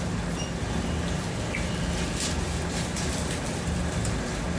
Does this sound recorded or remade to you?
recorded